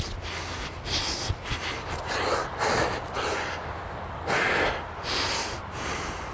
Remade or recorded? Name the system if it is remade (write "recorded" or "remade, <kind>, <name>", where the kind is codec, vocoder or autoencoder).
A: recorded